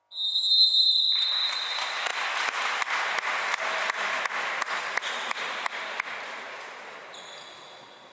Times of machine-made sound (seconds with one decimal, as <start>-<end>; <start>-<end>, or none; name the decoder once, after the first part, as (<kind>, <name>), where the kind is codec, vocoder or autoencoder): none